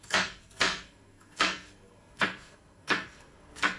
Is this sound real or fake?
fake